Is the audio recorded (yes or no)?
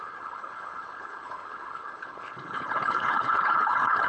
no